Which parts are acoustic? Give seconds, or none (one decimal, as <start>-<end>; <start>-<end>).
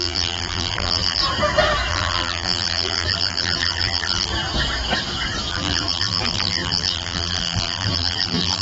1.2-1.9; 4.3-5.5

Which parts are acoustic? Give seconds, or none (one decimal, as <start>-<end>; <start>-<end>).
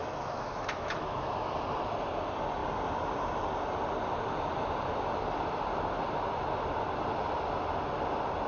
1.5-8.5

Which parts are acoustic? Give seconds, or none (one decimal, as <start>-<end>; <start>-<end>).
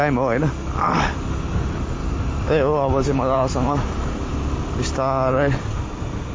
0.0-2.0; 5.8-6.3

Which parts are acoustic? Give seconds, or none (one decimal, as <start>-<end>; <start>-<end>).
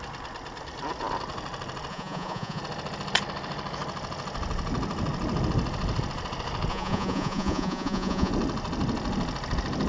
0.0-1.9; 2.6-6.7; 8.3-9.9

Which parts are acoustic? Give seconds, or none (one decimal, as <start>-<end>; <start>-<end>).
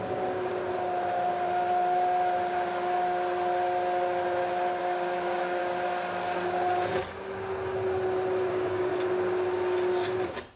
0.5-4.8; 5.6-8.5; 8.9-10.6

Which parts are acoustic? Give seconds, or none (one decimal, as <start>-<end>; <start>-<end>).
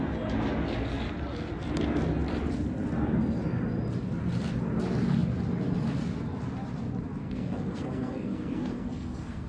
0.0-7.2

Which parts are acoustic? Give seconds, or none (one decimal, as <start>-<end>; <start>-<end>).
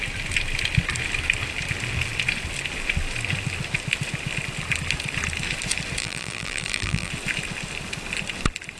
0.0-6.0; 7.1-8.8